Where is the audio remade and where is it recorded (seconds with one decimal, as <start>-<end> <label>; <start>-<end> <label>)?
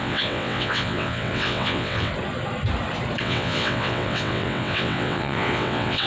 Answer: 0.0-2.1 remade; 2.1-3.2 recorded; 3.2-6.1 remade